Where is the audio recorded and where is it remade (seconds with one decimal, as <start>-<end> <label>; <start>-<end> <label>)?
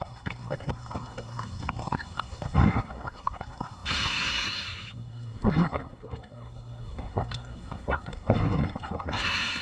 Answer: 0.0-9.6 remade